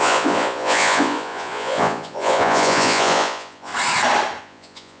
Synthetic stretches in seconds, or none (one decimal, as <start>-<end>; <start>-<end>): 0.0-3.7; 4.4-5.0

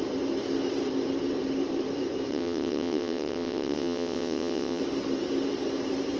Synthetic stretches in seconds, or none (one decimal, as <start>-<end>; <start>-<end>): 2.3-4.8

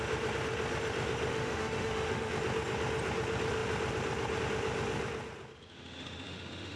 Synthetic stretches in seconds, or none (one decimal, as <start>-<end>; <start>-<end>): 1.3-2.3; 5.7-6.8

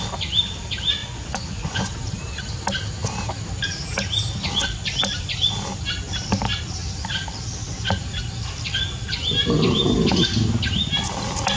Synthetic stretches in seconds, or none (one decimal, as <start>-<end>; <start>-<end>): 1.0-1.9